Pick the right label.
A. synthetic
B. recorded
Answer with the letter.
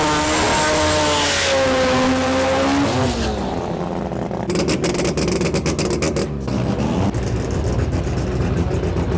B